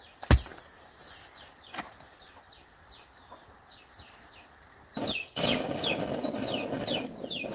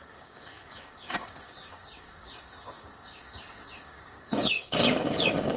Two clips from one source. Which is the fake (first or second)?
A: second